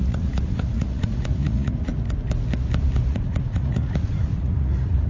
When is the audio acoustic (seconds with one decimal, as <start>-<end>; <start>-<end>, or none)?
1.9-3.1